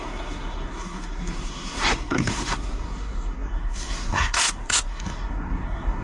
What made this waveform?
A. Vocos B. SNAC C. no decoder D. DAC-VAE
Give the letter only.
B